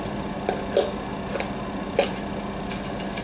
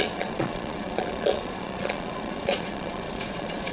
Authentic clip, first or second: first